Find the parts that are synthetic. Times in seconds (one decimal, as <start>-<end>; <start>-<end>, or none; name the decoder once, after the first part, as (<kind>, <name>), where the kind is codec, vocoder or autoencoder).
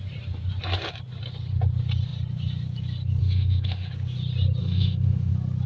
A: 3.2-3.9 (autoencoder, DAC-VAE); 4.6-5.3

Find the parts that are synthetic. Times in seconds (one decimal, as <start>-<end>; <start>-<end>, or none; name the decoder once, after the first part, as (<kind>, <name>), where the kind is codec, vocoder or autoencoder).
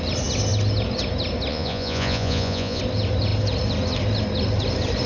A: 1.5-2.8 (vocoder, Vocos)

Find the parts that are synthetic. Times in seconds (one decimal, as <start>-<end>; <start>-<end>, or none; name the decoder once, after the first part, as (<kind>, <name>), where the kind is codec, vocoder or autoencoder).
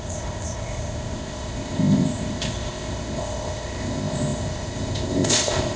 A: 0.0-5.8 (codec, ZipCodec)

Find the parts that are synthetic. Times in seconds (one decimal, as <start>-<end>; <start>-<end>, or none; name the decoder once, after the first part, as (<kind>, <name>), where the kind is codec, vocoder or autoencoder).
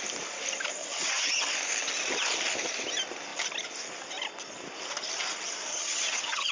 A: 0.8-1.5 (vocoder, HiFi-GAN); 5.7-6.5